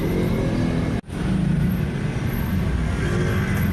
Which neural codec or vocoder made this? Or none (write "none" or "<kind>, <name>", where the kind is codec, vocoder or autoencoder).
none